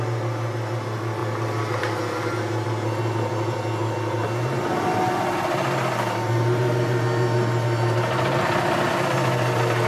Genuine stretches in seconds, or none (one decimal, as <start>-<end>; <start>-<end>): 0.0-1.2; 1.8-9.9